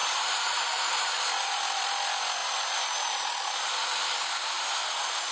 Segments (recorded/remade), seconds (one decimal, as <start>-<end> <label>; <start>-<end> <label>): 0.0-1.8 remade; 1.8-2.4 recorded; 2.4-3.5 remade; 3.5-5.3 recorded